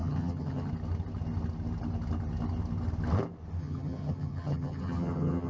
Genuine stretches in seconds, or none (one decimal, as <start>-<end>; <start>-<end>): 0.7-3.6